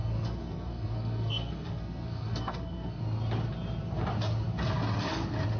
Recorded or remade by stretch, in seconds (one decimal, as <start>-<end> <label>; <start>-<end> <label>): 0.0-3.0 remade; 3.0-5.6 recorded

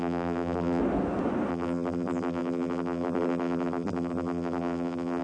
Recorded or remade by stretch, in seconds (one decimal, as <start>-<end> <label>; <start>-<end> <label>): 0.0-0.8 remade; 0.8-1.5 recorded; 1.5-5.2 remade